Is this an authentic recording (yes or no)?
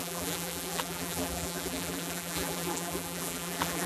no